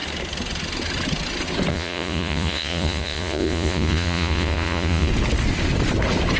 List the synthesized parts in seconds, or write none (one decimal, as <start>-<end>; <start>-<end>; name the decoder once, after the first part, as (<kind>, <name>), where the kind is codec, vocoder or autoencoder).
1.7-5.1 (vocoder, Vocos)